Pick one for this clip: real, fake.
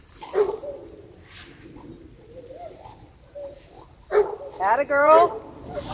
fake